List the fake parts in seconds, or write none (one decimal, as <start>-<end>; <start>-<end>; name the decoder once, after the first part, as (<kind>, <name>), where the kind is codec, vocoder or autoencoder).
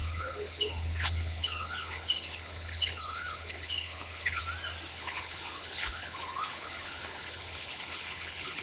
0.0-4.4 (codec, HILCodec); 4.9-8.6